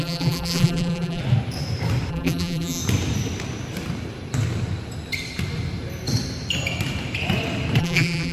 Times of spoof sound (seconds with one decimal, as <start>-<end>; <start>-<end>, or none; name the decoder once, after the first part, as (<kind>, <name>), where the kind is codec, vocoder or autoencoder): 0.0-1.2 (vocoder, BigVGAN v2); 2.1-2.8; 7.8-8.3